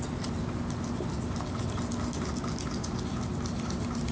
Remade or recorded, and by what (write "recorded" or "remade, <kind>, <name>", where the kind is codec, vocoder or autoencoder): recorded